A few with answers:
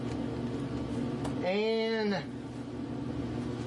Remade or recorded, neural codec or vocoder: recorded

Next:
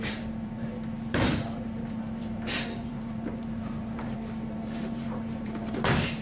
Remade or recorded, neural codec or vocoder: remade, vocoder, BigVGAN v2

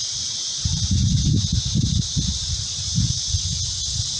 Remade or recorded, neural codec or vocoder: remade, vocoder, BigVGAN v2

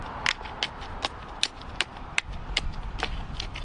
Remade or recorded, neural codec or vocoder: recorded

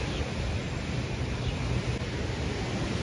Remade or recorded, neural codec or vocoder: recorded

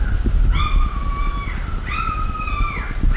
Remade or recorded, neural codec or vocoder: recorded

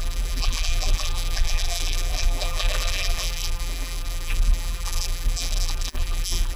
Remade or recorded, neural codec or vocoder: remade, vocoder, BigVGAN v2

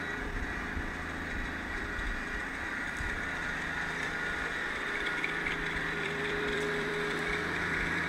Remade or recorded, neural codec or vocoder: remade, vocoder, BigVGAN v2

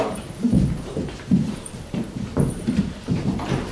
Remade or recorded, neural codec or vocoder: remade, vocoder, BigVGAN v2